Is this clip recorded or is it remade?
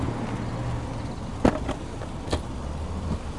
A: recorded